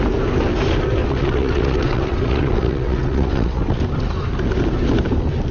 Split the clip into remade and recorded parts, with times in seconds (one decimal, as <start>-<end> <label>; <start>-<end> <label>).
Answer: 0.0-1.0 recorded; 1.0-3.8 remade; 3.8-5.5 recorded